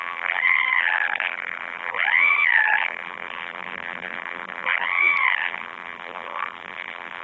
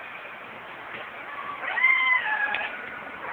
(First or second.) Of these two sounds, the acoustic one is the second